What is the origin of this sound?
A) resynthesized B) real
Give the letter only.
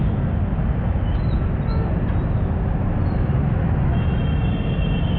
B